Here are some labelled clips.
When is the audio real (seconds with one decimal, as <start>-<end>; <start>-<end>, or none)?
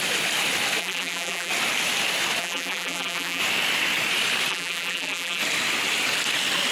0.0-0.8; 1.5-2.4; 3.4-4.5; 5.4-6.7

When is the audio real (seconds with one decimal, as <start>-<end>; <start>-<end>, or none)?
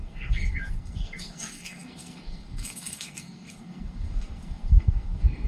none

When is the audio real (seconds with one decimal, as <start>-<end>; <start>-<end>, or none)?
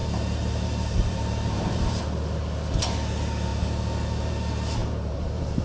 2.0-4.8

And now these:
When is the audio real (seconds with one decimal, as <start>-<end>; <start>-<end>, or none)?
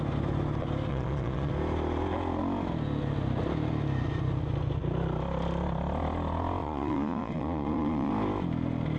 0.0-0.9; 1.5-6.6; 8.1-9.0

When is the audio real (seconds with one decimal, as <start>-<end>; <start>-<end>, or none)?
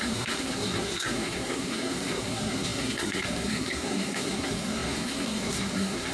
none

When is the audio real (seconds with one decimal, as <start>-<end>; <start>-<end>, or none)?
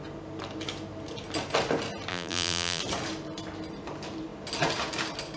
0.0-2.1; 2.8-5.4